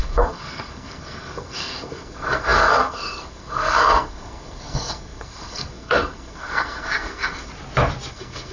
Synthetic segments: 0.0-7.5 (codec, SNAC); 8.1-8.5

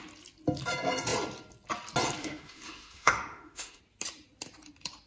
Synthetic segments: 2.2-3.8 (autoencoder, DAC-VAE)